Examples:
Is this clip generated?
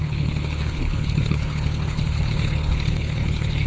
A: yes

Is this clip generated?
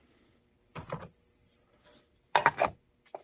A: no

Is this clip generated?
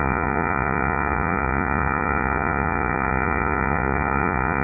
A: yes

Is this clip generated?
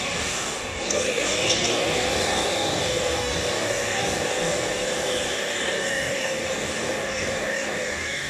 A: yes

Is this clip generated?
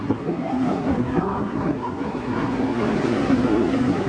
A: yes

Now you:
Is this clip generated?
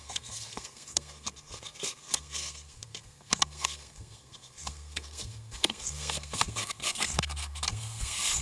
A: yes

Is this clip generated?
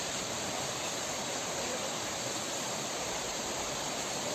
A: yes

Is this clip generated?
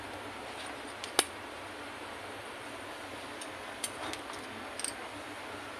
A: no